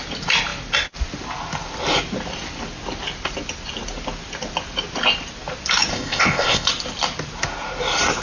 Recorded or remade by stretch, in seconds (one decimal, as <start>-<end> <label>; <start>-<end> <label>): 0.0-5.9 recorded; 5.9-6.7 remade; 6.7-8.2 recorded